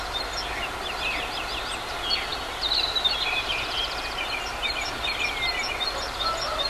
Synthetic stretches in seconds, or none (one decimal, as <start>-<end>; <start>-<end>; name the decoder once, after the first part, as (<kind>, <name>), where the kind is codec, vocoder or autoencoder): none